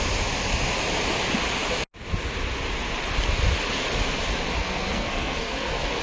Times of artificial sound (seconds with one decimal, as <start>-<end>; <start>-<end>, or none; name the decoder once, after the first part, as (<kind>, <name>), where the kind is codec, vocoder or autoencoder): 4.6-6.0 (codec, SNAC)